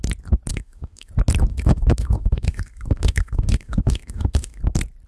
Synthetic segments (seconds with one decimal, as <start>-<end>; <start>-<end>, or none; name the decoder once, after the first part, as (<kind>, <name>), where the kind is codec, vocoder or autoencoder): 0.5-1.1 (autoencoder, DAC-VAE); 1.5-4.6